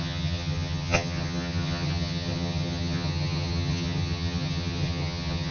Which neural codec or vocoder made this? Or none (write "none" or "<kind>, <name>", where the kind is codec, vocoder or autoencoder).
vocoder, HiFi-GAN